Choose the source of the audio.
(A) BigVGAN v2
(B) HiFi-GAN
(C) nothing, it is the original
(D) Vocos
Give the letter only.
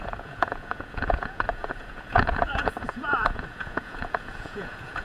D